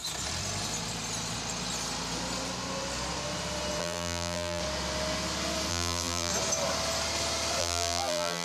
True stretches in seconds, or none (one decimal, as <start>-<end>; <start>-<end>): 0.0-3.8; 4.6-5.7; 6.3-7.6